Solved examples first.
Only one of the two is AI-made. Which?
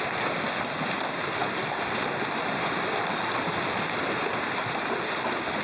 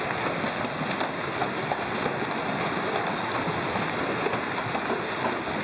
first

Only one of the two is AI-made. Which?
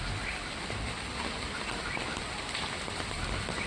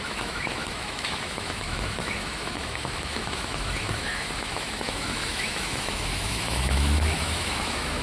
second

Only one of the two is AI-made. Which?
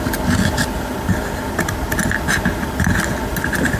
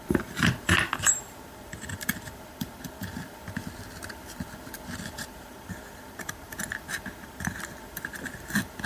second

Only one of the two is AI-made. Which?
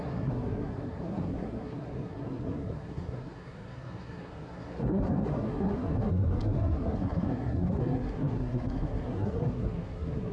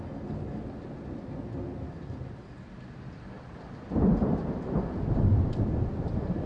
first